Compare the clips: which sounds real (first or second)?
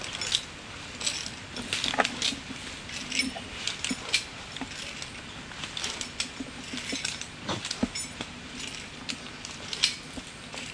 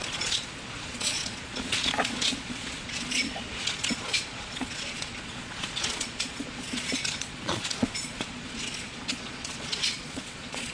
first